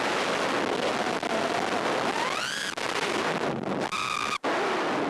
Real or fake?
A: real